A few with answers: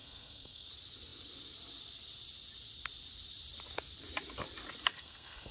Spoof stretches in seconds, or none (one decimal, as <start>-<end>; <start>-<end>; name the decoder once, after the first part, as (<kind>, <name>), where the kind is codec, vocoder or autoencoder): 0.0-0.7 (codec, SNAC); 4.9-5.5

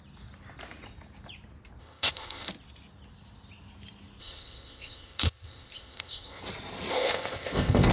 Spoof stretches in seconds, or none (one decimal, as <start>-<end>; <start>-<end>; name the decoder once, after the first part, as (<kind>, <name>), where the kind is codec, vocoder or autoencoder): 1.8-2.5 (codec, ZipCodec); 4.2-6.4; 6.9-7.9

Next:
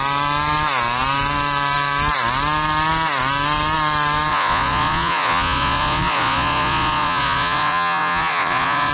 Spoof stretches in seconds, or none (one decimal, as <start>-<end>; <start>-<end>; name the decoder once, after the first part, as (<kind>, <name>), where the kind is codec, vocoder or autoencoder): 4.3-8.9 (vocoder, Vocos)

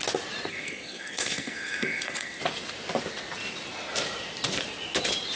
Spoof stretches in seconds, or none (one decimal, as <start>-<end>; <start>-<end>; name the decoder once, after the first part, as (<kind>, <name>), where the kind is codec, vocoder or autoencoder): 0.5-2.4 (codec, SNAC)

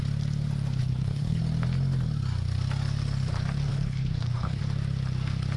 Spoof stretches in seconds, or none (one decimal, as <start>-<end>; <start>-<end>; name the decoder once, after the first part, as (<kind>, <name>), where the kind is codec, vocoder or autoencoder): 0.8-1.4 (codec, HILCodec); 3.7-4.6

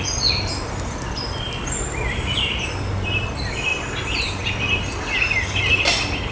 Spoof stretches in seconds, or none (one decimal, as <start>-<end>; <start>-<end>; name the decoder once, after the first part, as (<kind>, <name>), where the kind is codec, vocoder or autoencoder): none